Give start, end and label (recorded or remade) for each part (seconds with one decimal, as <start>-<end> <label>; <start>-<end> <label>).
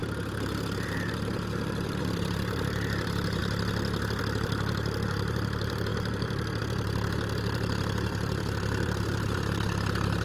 0.0-3.4 remade; 3.4-4.2 recorded; 4.2-10.2 remade